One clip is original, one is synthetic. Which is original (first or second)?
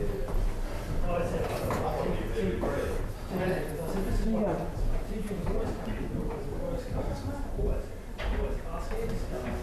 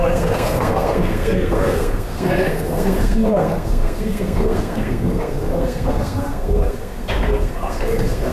first